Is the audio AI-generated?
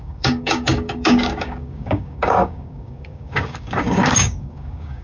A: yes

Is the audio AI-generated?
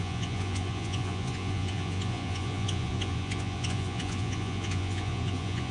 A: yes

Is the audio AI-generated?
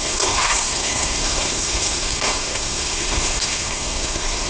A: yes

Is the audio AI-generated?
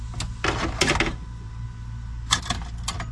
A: no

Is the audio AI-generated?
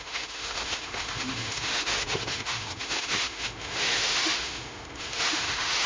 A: yes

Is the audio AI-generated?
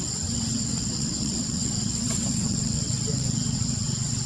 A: yes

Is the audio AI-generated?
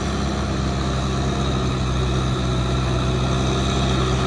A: no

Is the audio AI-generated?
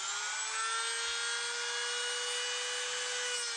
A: no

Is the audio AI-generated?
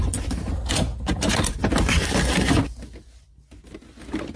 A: no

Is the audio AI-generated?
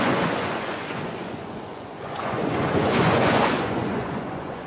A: yes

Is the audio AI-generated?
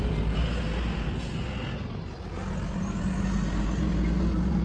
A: no